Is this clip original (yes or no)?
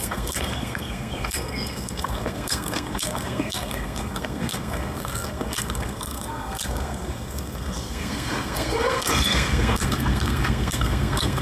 no